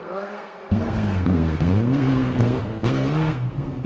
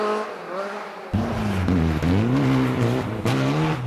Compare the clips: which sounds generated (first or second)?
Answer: first